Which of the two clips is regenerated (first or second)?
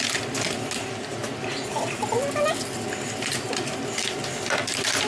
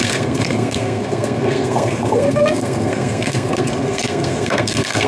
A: second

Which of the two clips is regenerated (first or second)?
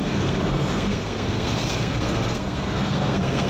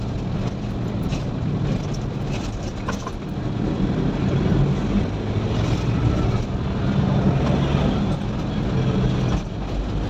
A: first